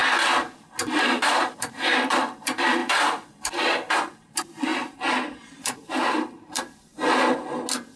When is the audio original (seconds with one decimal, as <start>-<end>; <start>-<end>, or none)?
0.0-1.0; 6.9-8.0